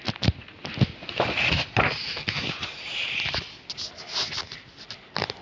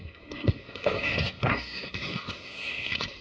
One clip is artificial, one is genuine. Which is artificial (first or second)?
second